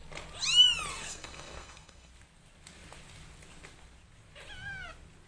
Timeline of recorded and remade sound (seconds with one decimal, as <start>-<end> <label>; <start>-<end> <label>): 0.0-0.9 recorded; 0.9-2.1 remade; 2.1-5.3 recorded